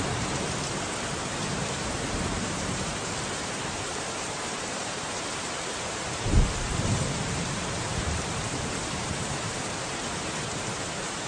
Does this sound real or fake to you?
fake